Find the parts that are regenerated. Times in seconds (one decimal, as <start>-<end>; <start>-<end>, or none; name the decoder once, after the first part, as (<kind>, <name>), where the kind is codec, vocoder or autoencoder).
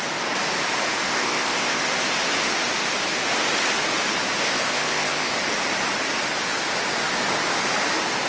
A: 1.1-1.8 (codec, ZipCodec); 4.4-5.4